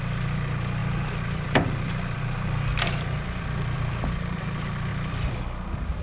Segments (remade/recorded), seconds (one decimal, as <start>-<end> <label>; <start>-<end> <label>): 0.0-0.8 recorded; 0.8-4.4 remade; 4.4-4.9 recorded; 4.9-6.0 remade